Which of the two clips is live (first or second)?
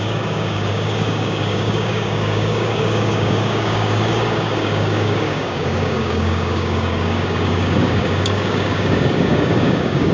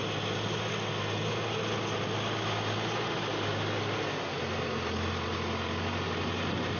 second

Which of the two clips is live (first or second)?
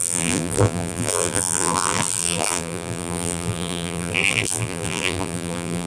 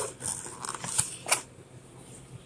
second